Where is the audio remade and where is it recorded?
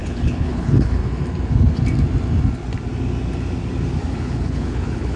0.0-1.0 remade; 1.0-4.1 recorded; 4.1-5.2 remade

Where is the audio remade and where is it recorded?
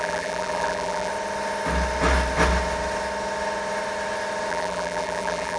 0.0-1.1 remade; 1.1-4.5 recorded; 4.5-5.6 remade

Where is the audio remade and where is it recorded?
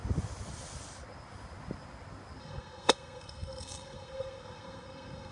0.0-2.4 recorded; 2.4-5.3 remade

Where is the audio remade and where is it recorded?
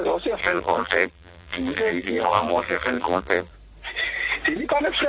0.0-0.4 recorded; 0.4-3.5 remade; 3.5-5.1 recorded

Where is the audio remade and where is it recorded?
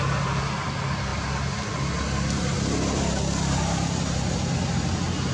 0.0-5.3 recorded